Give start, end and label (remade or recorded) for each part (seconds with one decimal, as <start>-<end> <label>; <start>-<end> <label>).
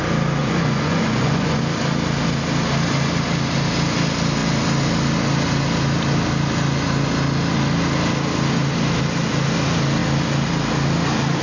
0.0-0.4 recorded; 0.4-1.6 remade; 1.6-11.4 recorded